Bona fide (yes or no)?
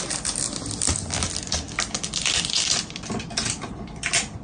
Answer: yes